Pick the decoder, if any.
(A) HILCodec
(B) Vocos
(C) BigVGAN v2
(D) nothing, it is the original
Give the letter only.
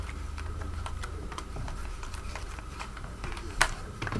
C